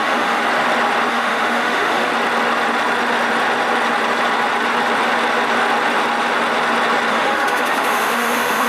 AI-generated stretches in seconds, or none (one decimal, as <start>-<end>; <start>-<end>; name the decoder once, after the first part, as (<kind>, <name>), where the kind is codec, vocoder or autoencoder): 0.0-0.4 (autoencoder, DAC-VAE); 1.1-2.1; 7.1-8.7